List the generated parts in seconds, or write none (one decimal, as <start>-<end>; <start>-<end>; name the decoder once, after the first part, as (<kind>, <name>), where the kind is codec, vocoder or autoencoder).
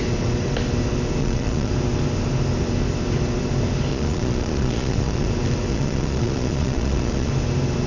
1.2-1.7 (vocoder, Vocos); 3.9-5.3; 5.7-7.3